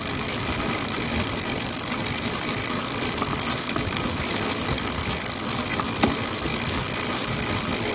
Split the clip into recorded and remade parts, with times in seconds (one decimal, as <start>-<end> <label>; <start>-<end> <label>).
0.0-6.5 remade; 6.5-7.9 recorded